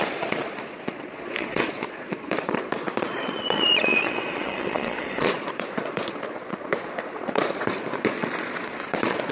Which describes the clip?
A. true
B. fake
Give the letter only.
B